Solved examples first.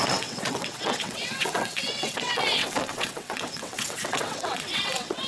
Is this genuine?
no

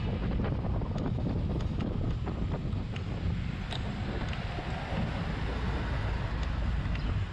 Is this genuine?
yes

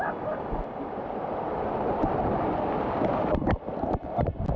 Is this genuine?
no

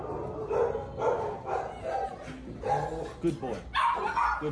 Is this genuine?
yes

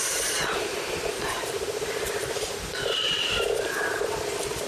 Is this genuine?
no